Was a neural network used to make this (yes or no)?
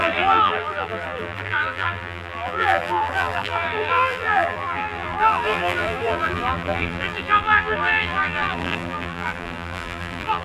yes